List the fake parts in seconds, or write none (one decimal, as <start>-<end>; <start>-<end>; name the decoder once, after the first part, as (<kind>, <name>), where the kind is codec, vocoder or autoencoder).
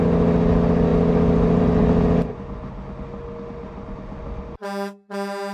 none